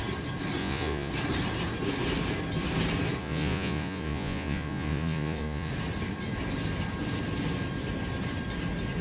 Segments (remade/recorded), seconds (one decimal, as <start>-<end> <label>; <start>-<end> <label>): 0.0-0.6 recorded; 0.6-1.1 remade; 1.1-3.2 recorded; 3.2-5.7 remade; 5.7-9.0 recorded